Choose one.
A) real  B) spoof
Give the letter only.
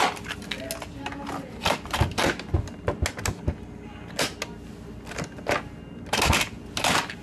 A